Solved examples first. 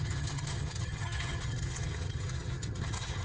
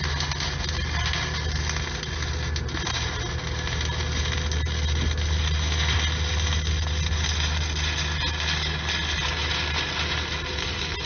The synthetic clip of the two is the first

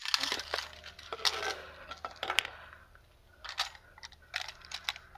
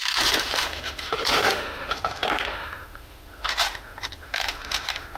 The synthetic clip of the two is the second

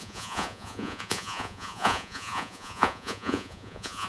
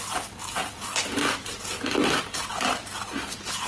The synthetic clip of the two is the first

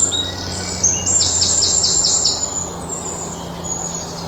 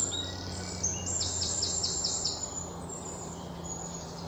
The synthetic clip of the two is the second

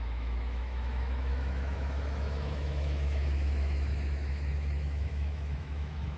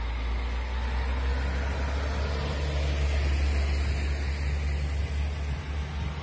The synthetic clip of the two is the first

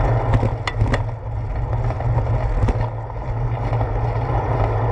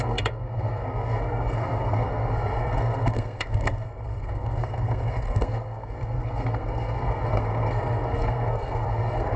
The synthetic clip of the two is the second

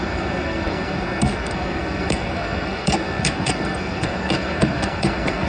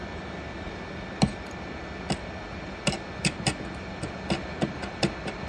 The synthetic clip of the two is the first